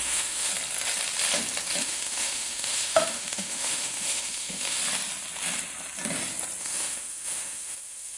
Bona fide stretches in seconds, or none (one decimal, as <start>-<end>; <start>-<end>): 0.5-1.8; 4.8-6.6